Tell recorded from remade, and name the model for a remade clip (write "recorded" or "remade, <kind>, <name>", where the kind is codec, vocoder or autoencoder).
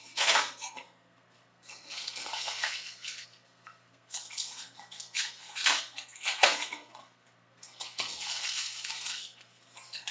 remade, codec, SNAC